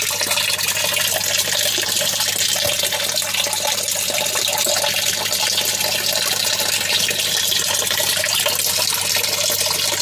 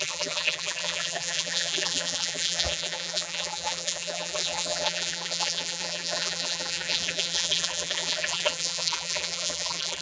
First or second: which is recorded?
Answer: first